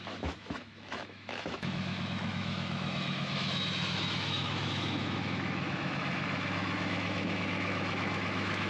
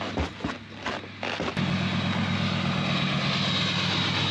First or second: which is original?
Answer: second